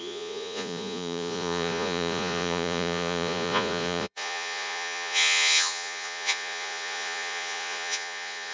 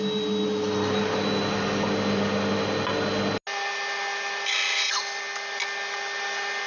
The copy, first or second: first